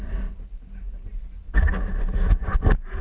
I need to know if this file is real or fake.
real